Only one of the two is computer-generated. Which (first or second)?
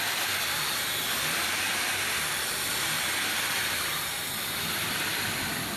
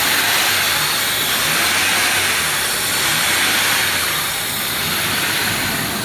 first